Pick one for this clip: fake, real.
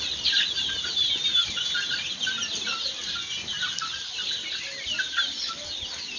real